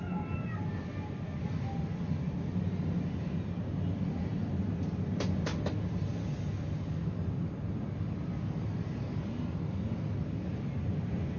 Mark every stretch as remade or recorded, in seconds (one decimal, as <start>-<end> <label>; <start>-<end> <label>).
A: 0.0-11.4 recorded